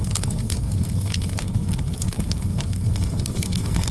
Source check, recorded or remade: remade